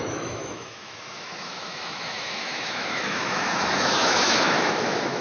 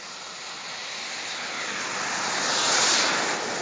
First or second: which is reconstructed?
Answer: first